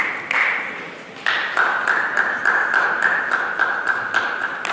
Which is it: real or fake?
fake